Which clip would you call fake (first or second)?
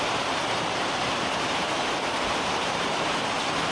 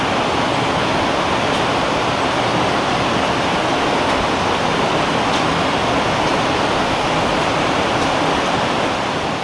first